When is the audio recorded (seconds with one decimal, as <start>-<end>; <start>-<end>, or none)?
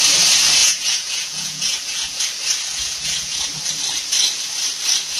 0.0-0.6; 2.2-2.8; 3.5-5.2